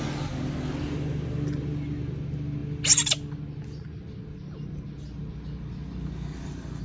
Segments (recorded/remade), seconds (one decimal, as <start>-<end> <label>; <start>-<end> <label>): 0.0-6.8 recorded